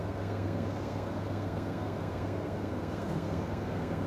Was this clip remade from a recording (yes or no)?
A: yes